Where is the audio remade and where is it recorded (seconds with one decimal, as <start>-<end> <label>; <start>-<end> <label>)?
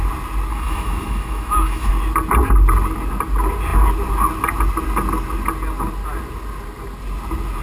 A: 0.0-0.5 recorded; 0.5-1.9 remade; 1.9-7.6 recorded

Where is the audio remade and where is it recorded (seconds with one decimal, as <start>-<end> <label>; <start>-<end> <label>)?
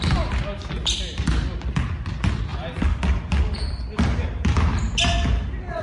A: 0.0-5.8 recorded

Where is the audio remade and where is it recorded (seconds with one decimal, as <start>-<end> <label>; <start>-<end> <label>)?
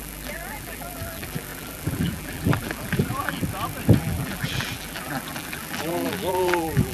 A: 0.0-3.4 remade; 3.4-4.0 recorded; 4.0-6.9 remade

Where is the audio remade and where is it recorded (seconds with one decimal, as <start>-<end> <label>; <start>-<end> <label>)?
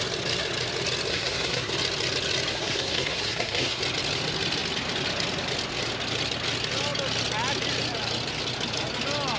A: 0.0-1.1 recorded; 1.1-1.7 remade; 1.7-2.5 recorded; 2.5-3.8 remade; 3.8-9.4 recorded